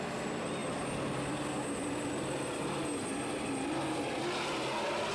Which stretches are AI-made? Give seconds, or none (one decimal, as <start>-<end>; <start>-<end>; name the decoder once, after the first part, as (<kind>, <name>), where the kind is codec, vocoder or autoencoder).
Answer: none